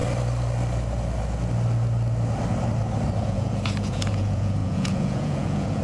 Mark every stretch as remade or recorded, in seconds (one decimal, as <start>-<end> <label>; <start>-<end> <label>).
0.0-3.2 recorded; 3.2-5.8 remade